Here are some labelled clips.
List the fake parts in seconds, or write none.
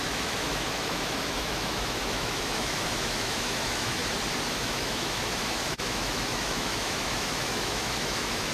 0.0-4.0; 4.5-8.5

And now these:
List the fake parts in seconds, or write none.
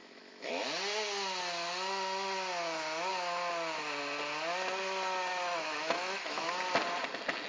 0.0-0.5; 5.3-6.5